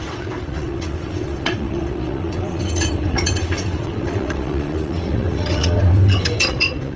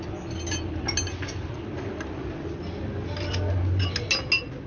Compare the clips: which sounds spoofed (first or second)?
first